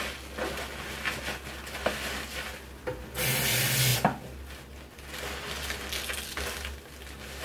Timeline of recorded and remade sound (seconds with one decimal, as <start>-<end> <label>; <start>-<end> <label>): 0.0-7.4 recorded